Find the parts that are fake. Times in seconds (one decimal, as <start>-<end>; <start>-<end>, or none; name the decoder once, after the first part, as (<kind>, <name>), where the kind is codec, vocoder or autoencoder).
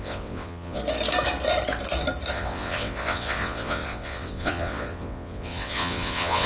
0.0-0.8 (vocoder, WaveNeXt); 2.3-6.5